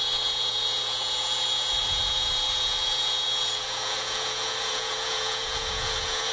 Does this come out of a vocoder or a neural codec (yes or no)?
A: yes